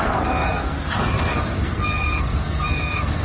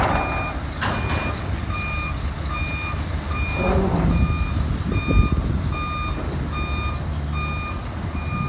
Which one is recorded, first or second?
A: second